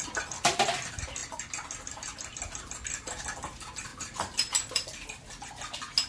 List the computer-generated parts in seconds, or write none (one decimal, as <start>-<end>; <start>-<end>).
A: none